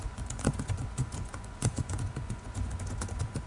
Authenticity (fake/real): fake